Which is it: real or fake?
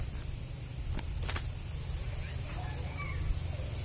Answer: real